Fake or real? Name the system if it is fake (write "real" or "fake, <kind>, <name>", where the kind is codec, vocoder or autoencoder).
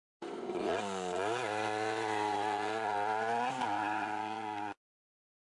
fake, vocoder, Vocos